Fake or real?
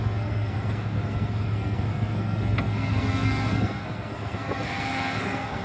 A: fake